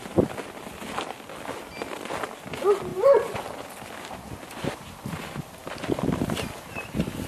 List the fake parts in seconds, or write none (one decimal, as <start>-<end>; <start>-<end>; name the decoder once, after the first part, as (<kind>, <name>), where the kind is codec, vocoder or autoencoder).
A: 2.9-3.7 (vocoder, BigVGAN v2)